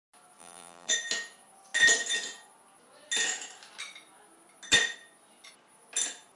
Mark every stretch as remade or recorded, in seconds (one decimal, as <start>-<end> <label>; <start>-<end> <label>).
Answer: 0.0-0.4 recorded; 0.4-0.9 remade; 0.9-6.4 recorded